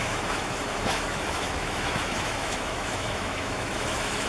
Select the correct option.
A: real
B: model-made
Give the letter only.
B